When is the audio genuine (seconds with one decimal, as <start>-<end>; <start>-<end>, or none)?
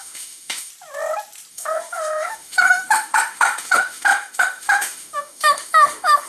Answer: 0.7-1.5